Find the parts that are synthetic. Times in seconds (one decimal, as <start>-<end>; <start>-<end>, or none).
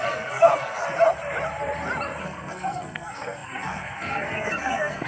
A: 0.0-0.8; 2.2-5.1